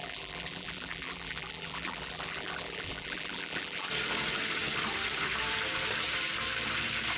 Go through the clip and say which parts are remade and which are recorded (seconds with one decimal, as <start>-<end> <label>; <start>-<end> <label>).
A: 0.0-3.9 remade; 3.9-7.2 recorded